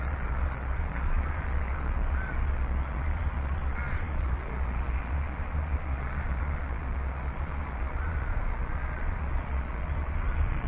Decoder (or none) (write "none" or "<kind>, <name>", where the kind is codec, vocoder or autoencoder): vocoder, Vocos